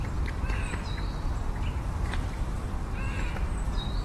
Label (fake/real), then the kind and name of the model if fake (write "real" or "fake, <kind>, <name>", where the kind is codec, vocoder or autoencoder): fake, vocoder, BigVGAN v2